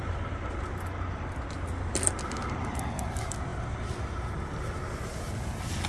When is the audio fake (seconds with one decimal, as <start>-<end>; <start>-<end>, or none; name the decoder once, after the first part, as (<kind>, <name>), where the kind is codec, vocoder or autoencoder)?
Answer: none